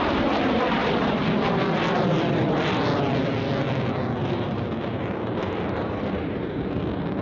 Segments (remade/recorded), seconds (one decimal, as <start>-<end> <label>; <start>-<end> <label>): 0.0-4.2 recorded; 4.2-7.2 remade